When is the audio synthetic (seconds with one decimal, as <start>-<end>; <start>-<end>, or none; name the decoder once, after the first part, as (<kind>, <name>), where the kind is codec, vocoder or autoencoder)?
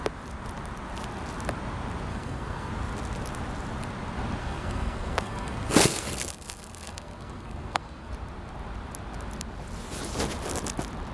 2.1-2.7 (codec, SNAC); 4.4-8.1